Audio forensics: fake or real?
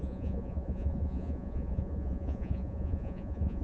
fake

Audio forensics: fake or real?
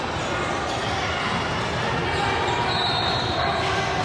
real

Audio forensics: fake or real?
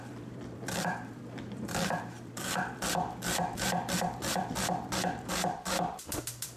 fake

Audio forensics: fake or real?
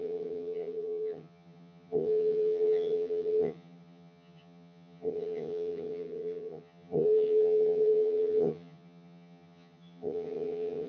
fake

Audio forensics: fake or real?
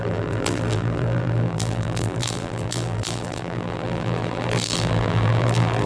fake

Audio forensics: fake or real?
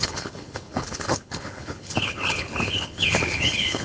fake